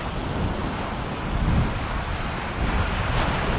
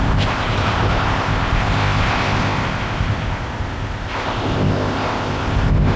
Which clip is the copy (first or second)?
second